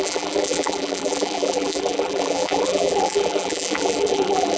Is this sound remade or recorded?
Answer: remade